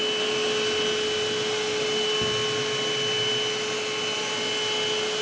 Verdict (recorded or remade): recorded